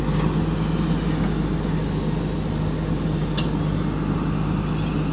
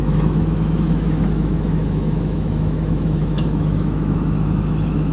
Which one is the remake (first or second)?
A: second